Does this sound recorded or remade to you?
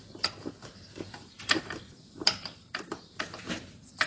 remade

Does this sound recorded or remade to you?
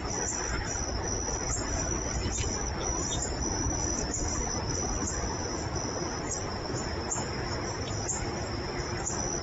recorded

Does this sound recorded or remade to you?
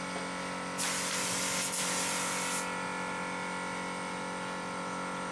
recorded